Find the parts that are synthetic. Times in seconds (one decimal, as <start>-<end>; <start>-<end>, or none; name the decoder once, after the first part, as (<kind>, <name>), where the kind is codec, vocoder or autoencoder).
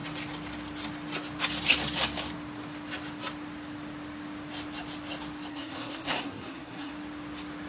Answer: 5.5-6.9 (codec, SNAC)